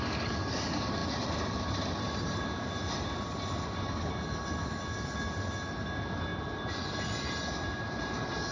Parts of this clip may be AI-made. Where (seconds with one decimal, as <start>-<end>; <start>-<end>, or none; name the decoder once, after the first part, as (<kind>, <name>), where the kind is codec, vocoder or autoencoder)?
none

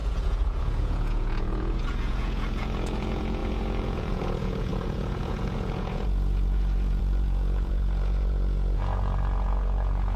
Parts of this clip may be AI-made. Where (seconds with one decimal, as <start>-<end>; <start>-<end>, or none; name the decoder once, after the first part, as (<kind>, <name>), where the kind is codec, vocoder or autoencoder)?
0.0-10.2 (vocoder, Vocos)

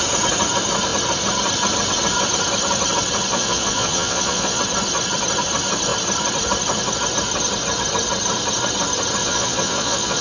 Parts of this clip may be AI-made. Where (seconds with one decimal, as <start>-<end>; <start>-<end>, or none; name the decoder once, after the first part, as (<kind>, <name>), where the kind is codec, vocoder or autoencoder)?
3.3-4.6 (vocoder, Vocos); 9.2-10.2

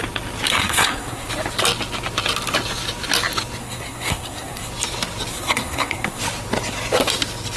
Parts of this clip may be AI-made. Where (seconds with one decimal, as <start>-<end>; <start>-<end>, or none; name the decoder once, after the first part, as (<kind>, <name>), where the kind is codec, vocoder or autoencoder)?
0.5-1.3 (codec, SNAC); 3.6-4.7; 5.3-6.2

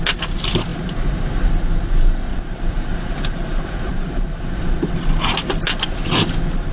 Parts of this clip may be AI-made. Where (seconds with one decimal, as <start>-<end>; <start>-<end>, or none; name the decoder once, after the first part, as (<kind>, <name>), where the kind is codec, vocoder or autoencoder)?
0.7-1.3 (vocoder, BigVGAN v2); 2.3-4.8

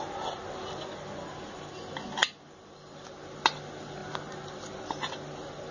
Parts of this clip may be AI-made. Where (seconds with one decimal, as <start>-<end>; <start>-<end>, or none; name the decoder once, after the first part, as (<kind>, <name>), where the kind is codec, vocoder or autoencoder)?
none

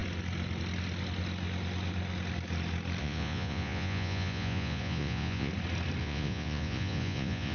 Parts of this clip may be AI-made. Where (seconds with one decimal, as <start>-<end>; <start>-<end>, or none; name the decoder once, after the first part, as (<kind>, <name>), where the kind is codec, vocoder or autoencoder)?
3.0-5.5 (vocoder, Vocos); 6.0-7.5